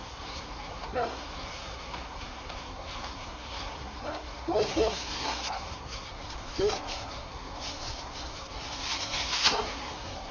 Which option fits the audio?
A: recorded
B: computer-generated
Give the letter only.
B